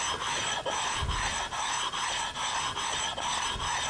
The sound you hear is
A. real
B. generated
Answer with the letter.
A